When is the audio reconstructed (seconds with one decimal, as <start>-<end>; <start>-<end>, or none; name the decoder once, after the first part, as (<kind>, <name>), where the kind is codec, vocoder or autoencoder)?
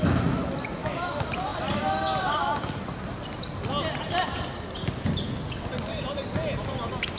none